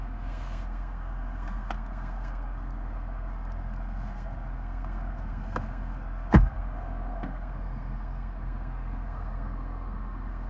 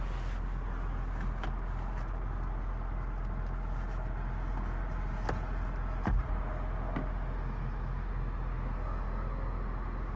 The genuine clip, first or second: second